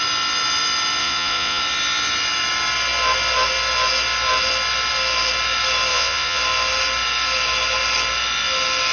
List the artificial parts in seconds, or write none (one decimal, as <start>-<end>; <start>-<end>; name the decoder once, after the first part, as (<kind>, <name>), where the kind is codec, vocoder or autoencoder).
1.0-1.6 (vocoder, Vocos); 5.9-6.4